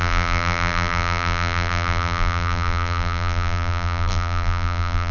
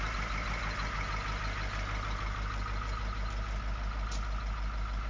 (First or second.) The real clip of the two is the second